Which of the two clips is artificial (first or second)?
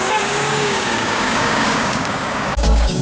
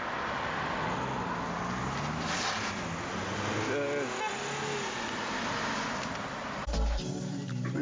first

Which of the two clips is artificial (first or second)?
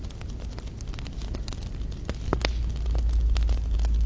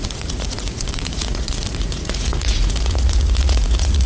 second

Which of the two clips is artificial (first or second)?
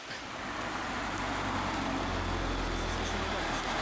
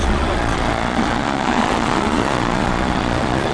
second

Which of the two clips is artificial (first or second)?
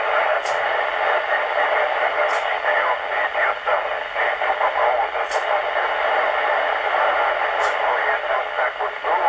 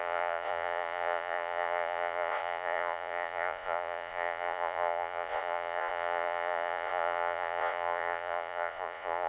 second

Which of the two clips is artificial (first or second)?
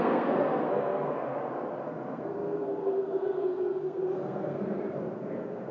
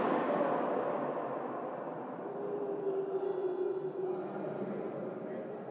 first